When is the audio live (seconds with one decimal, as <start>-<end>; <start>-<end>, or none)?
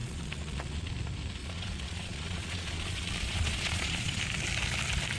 0.9-1.4; 4.2-5.2